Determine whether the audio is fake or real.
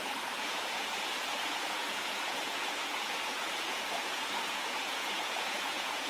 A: fake